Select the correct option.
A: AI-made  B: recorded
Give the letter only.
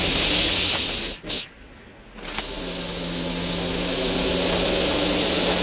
B